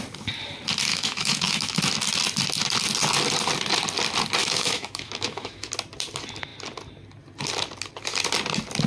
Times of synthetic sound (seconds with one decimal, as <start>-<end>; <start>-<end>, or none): 0.9-1.8; 4.4-5.7